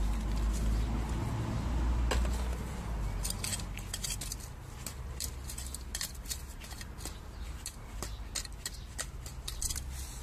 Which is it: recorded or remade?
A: recorded